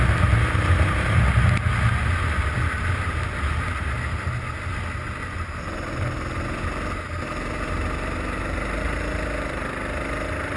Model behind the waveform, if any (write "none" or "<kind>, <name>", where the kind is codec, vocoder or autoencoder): none